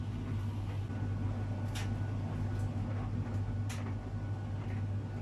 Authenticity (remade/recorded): recorded